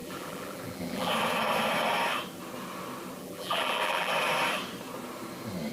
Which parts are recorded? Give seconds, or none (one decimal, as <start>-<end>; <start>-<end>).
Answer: 1.1-3.2; 4.1-5.7